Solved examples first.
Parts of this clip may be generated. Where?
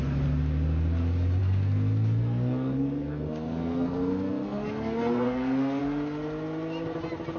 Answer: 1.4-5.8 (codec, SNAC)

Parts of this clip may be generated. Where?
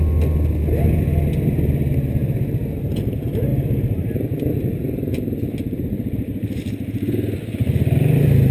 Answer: 3.5-4.4 (vocoder, BigVGAN v2); 5.1-6.7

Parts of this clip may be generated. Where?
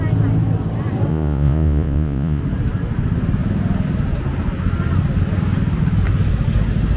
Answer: 1.1-2.4 (vocoder, Vocos)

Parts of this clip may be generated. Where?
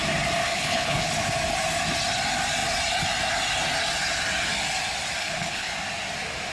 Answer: 0.4-1.1 (codec, HILCodec); 5.2-5.7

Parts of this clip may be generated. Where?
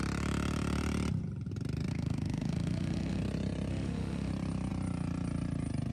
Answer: 1.9-3.2 (autoencoder, DAC-VAE); 3.7-4.3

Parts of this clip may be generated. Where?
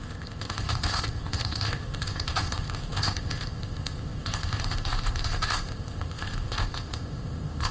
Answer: 0.0-7.7 (codec, ZipCodec)